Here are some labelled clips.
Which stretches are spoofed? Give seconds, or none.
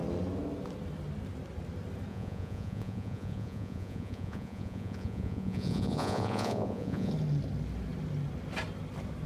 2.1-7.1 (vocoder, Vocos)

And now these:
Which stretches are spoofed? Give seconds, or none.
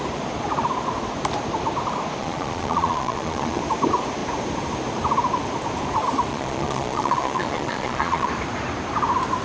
2.2-3.6 (vocoder, Vocos); 6.3-8.3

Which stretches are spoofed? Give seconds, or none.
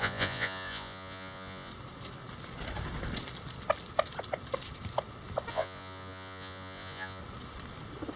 0.0-1.7 (vocoder, Vocos); 5.5-7.2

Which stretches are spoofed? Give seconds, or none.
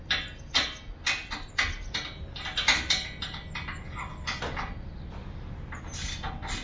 none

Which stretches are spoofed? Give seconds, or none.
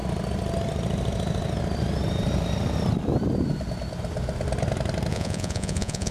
5.1-6.1 (vocoder, Vocos)